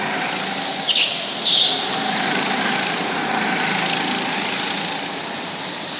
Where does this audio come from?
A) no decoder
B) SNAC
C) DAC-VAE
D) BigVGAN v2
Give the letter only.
A